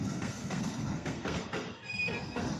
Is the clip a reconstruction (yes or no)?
yes